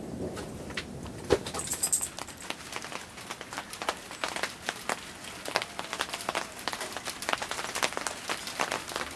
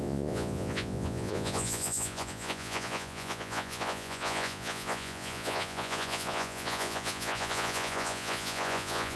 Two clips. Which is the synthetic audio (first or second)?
second